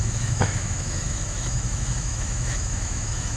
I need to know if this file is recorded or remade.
remade